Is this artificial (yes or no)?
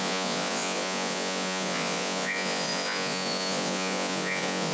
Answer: yes